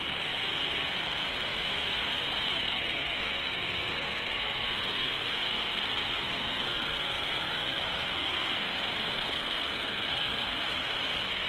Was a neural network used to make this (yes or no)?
yes